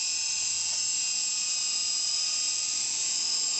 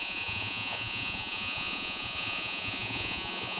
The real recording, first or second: first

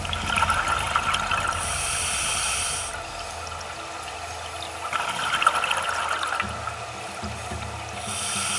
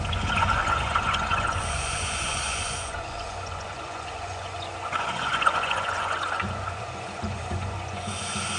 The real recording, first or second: first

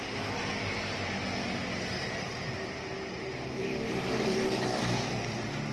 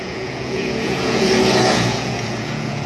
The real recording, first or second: first